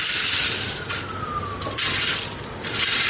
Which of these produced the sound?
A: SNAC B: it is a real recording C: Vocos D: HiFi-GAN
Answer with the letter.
B